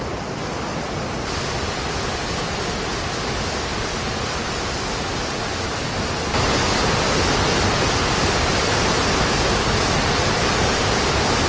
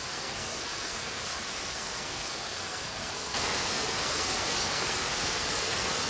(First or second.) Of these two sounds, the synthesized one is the second